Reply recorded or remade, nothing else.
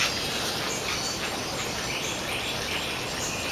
recorded